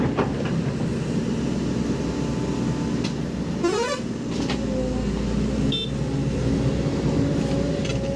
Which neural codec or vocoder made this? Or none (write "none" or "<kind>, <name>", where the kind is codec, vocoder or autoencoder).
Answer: none